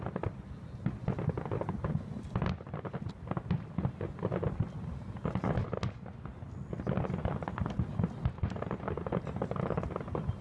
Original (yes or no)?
yes